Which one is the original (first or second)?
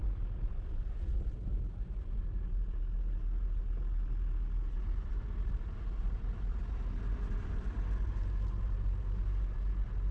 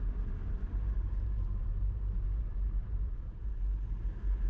first